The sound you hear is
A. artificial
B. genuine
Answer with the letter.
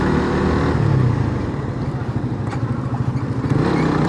B